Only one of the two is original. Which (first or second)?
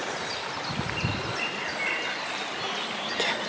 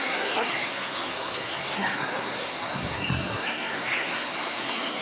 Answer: first